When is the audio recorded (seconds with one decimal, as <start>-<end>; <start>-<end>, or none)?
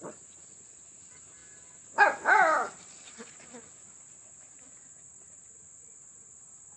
0.0-6.8